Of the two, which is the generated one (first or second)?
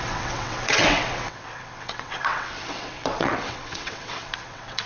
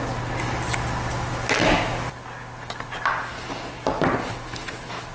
first